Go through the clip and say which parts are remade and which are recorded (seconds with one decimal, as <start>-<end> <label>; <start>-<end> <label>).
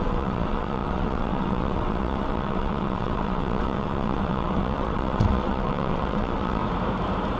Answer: 0.0-6.6 remade; 6.6-7.4 recorded